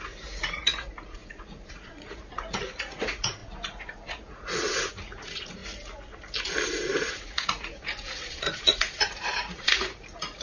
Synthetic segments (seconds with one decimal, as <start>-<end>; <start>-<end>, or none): 0.0-5.6; 7.1-10.4